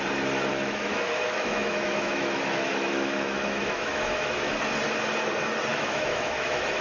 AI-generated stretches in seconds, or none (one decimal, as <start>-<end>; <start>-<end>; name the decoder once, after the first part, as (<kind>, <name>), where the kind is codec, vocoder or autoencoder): 0.5-4.6 (autoencoder, DAC-VAE); 5.7-6.8